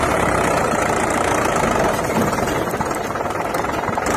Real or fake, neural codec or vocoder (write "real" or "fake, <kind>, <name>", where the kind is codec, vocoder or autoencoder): fake, vocoder, BigVGAN v2